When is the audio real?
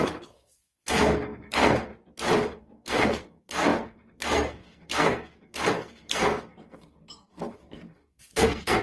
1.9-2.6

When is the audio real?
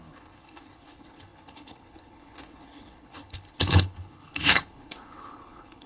none